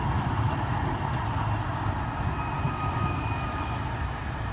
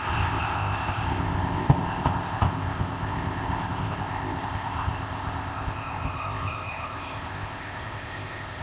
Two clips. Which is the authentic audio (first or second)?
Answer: first